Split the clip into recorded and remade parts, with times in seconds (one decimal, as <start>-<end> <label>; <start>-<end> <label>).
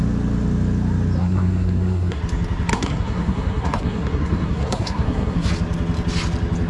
0.0-1.2 recorded; 1.2-2.2 remade; 2.2-2.7 recorded; 2.7-5.5 remade; 5.5-6.7 recorded